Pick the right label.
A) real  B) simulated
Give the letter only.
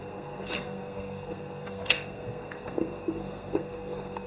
B